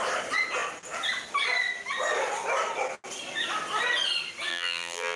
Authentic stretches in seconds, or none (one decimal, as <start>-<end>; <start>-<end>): 0.0-4.5